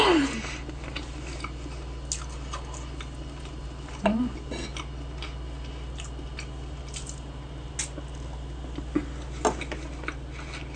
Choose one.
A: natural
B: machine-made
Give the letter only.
A